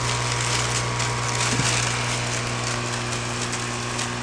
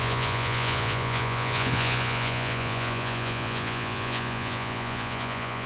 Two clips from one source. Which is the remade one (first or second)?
second